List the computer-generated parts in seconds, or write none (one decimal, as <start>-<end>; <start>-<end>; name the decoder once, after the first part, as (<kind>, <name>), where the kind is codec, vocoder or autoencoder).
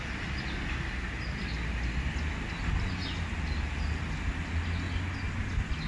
none